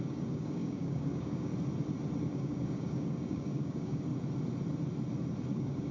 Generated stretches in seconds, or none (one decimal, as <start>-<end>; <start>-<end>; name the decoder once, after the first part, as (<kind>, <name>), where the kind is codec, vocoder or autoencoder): 0.0-1.5 (codec, DAC); 2.2-4.1; 5.5-5.9